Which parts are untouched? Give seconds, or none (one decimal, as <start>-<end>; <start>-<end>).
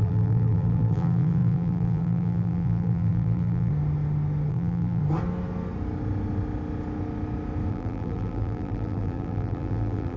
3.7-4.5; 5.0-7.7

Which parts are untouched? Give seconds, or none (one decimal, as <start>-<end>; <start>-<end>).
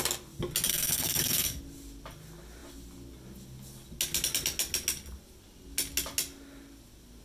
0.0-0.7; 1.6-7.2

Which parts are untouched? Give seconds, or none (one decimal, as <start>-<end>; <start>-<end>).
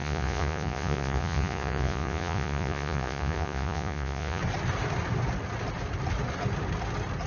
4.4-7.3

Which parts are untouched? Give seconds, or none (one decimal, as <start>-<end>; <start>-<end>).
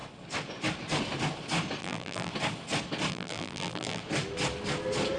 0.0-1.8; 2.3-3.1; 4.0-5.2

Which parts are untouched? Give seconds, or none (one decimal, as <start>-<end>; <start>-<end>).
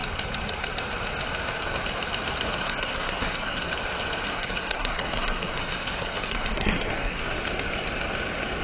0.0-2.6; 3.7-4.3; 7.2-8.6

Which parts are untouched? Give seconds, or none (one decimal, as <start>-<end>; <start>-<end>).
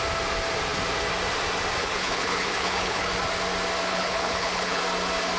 0.0-1.8; 3.1-3.9; 4.8-5.4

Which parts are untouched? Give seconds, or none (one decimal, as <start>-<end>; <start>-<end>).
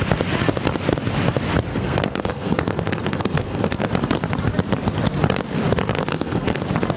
0.0-1.7; 3.9-6.1; 6.6-7.0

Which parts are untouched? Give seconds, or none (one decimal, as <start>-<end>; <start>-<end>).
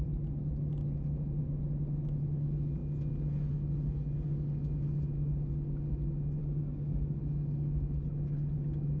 0.0-6.4; 7.2-9.0